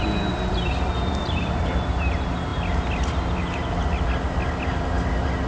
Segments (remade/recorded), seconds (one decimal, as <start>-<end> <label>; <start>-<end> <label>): 0.0-5.5 recorded